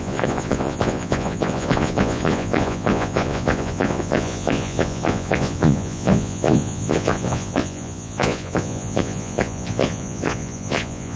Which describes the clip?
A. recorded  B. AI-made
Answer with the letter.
B